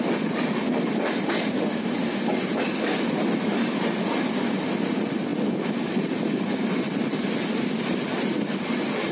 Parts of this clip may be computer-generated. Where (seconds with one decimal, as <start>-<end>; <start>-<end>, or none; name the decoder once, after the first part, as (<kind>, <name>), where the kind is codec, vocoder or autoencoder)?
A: none